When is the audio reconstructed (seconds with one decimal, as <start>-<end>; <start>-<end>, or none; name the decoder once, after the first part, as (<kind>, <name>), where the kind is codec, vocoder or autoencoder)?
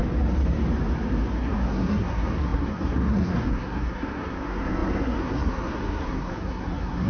1.4-7.1 (codec, SNAC)